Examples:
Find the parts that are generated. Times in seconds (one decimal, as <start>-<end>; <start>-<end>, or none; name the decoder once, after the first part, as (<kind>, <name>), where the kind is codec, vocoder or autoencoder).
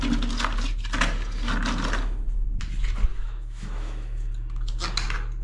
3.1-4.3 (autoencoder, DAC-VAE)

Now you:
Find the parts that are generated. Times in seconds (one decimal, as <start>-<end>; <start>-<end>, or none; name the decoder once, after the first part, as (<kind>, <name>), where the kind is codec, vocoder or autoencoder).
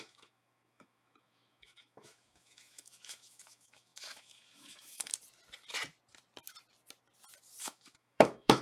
0.0-5.1 (autoencoder, DAC-VAE); 7.6-8.6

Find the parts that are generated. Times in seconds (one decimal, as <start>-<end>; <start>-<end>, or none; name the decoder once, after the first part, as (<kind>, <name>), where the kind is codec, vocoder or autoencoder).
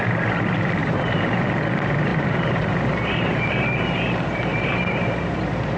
0.8-1.6 (vocoder, BigVGAN v2); 2.1-5.8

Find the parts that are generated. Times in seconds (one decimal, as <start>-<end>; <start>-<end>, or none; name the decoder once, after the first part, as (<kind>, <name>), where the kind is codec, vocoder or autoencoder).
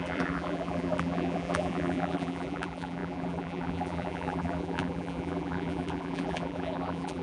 0.0-7.2 (vocoder, BigVGAN v2)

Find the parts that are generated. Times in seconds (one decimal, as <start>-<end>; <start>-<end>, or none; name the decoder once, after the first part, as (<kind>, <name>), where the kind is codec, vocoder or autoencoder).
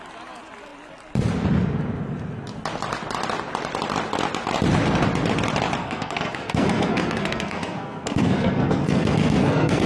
5.8-9.9 (codec, SNAC)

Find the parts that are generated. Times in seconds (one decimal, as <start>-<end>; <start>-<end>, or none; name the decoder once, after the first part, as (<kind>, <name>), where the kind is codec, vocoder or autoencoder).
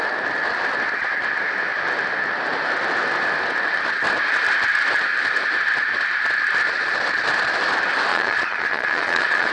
8.1-9.5 (vocoder, Vocos)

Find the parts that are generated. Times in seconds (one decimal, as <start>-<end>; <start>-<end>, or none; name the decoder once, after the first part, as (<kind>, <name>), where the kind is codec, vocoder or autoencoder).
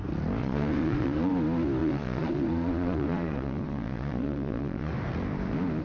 0.4-1.3 (vocoder, Vocos); 1.8-4.9